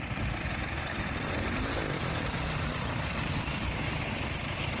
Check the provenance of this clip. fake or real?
fake